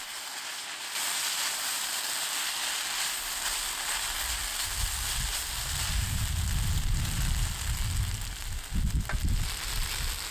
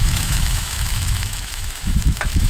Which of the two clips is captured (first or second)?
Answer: first